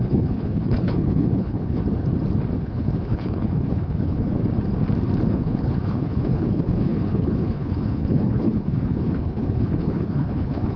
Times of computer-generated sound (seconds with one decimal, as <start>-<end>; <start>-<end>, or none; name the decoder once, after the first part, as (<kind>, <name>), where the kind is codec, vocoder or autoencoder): 0.0-1.8 (codec, HILCodec); 2.6-4.4; 5.3-10.8